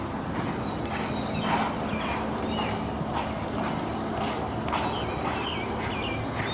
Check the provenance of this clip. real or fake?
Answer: real